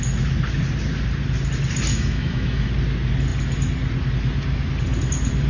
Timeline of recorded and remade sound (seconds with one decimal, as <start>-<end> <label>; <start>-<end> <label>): 0.0-1.9 recorded; 1.9-2.7 remade; 2.7-5.5 recorded